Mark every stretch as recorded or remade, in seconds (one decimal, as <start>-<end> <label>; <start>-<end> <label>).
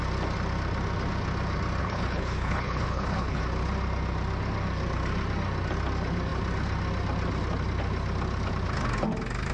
0.0-1.8 recorded; 1.8-3.4 remade; 3.4-9.5 recorded